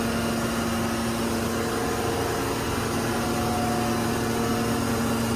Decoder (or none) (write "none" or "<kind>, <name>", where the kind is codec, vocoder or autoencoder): none